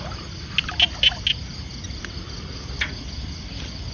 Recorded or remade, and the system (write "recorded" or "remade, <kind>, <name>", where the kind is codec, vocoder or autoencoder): recorded